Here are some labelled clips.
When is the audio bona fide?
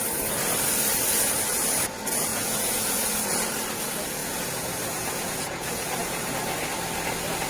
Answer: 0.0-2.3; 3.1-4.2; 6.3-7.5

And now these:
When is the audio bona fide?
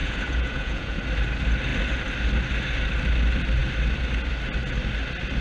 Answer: 1.0-5.4